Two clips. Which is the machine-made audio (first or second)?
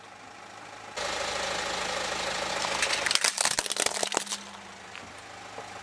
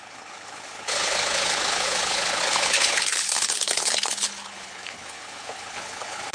second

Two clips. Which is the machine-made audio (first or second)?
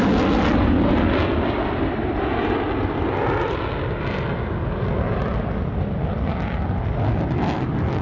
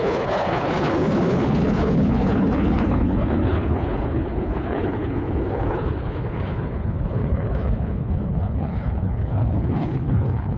second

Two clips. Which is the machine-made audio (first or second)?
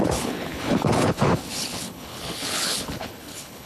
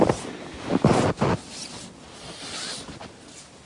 first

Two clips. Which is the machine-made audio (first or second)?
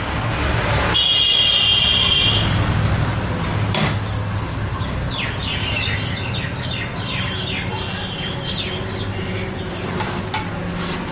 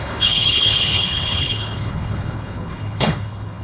second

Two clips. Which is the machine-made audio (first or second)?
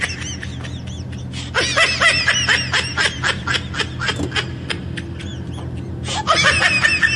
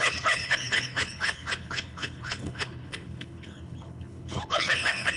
second